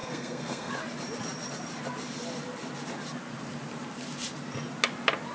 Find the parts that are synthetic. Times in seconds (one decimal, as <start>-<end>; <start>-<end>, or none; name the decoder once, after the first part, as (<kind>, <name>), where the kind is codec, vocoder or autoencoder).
0.0-0.7 (codec, SNAC)